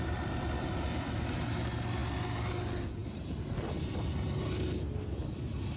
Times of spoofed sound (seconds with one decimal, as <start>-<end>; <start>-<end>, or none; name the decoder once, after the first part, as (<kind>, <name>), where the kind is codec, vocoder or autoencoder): none